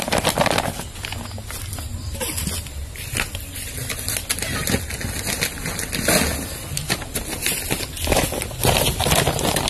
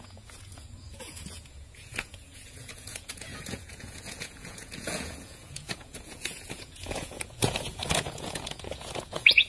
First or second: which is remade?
second